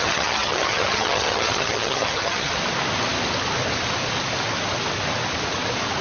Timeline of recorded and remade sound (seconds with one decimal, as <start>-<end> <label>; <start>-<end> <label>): 0.0-2.5 remade; 2.5-6.0 recorded